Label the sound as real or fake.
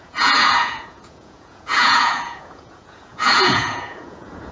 fake